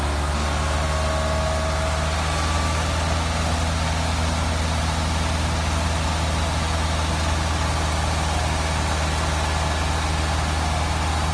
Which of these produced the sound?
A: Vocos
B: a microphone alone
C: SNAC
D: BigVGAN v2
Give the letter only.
B